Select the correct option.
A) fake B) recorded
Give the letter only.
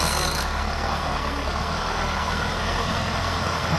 A